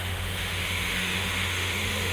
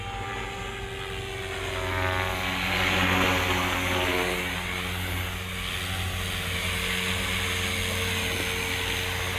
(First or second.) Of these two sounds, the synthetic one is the first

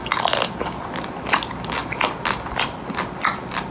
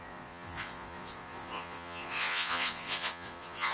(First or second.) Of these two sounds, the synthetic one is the second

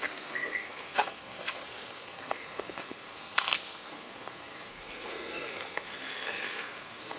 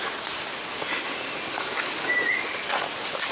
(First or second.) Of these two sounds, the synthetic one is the first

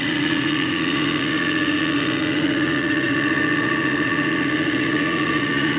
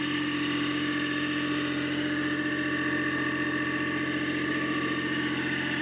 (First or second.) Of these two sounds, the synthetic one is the first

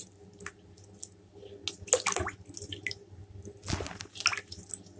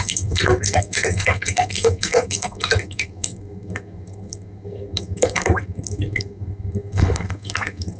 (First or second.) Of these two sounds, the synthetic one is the second